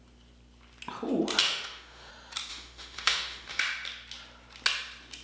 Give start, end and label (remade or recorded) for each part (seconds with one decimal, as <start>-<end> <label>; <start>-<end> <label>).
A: 0.0-1.4 recorded; 1.4-2.1 remade; 2.1-2.5 recorded; 2.5-3.6 remade; 3.6-5.2 recorded